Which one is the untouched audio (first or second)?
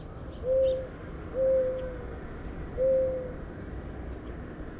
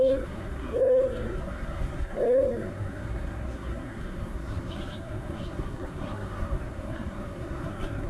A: first